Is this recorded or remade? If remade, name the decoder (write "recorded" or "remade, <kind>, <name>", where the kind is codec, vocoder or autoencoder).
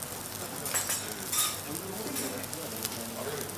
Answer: recorded